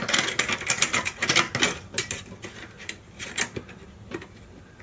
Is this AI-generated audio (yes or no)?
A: no